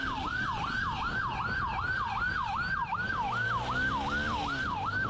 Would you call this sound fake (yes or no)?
no